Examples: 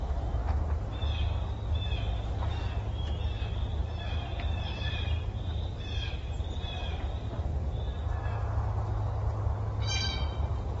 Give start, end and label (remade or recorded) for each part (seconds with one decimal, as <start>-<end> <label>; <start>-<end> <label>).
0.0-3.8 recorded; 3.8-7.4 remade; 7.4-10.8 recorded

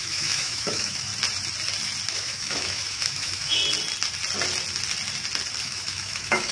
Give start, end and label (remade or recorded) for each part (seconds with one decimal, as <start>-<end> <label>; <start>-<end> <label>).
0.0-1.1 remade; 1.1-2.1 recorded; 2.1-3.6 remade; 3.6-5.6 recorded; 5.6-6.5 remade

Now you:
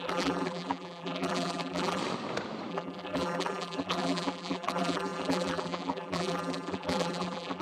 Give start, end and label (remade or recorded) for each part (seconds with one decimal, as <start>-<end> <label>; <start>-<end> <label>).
0.0-2.0 remade; 2.0-2.7 recorded; 2.7-7.6 remade